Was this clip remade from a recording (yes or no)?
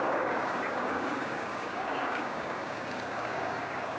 yes